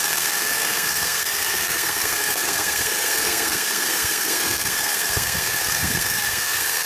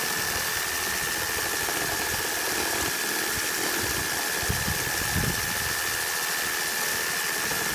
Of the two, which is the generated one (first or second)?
first